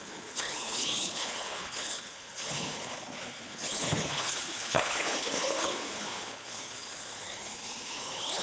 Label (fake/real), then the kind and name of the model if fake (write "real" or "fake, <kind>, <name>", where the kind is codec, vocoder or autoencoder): fake, codec, HILCodec